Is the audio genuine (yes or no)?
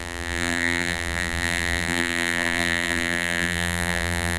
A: no